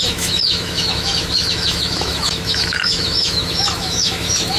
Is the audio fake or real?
fake